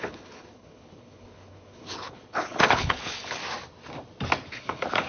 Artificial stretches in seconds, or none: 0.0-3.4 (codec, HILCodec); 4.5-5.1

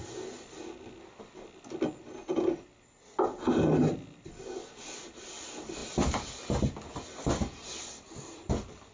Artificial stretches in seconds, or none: none

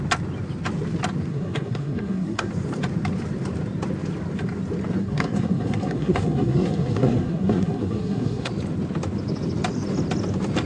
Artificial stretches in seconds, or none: 1.3-2.5 (codec, SNAC); 5.0-8.5

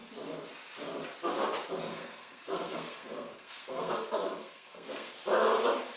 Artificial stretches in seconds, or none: 1.9-3.9 (codec, SNAC); 4.4-5.1

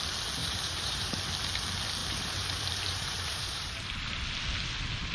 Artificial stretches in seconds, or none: 0.4-1.1 (vocoder, BigVGAN v2); 2.0-3.7